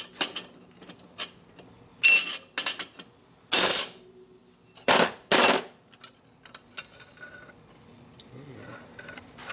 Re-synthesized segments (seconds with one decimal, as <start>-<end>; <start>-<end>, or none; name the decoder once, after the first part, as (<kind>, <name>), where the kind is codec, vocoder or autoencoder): 8.7-9.5 (vocoder, BigVGAN v2)